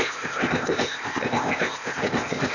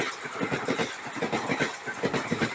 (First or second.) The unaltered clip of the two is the second